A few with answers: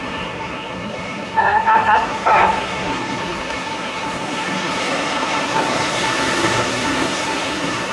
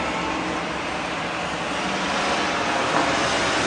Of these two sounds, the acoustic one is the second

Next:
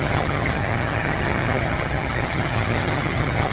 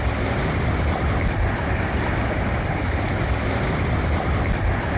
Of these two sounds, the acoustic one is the second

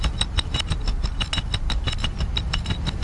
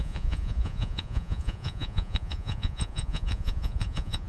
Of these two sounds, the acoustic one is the first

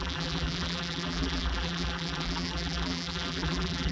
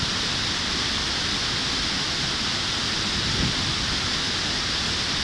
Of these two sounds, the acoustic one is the second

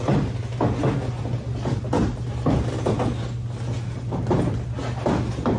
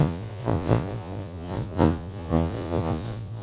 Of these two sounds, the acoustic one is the first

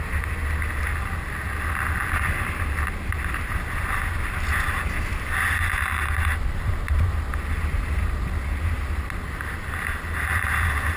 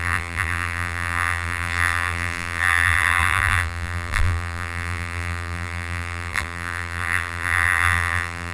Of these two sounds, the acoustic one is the first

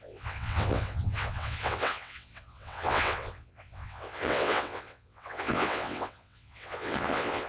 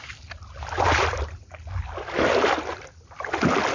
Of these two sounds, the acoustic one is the second